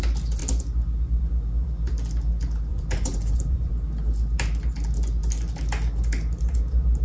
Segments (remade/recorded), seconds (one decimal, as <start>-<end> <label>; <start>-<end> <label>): 0.0-2.7 recorded; 2.7-3.7 remade; 3.7-7.0 recorded